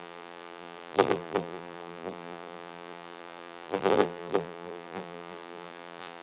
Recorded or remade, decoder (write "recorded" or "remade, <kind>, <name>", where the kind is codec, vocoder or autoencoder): remade, vocoder, BigVGAN v2